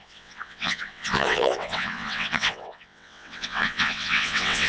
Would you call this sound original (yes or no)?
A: no